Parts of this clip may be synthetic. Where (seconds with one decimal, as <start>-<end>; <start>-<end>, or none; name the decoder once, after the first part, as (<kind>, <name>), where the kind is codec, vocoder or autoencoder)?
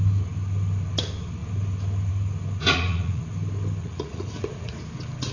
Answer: 2.6-3.2 (vocoder, Vocos); 3.8-4.7